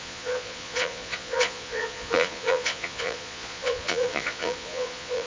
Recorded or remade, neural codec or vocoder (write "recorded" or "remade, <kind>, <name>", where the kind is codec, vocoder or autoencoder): remade, vocoder, Vocos